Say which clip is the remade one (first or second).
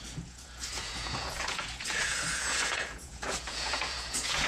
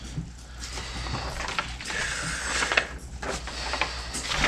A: first